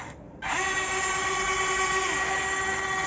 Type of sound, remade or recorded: recorded